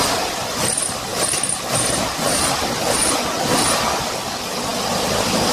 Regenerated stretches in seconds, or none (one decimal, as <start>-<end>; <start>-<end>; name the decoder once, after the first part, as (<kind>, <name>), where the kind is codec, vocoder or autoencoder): 1.1-2.9 (vocoder, BigVGAN v2)